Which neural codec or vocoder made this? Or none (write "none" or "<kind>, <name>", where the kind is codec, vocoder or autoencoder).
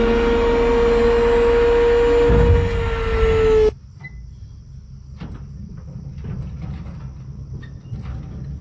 none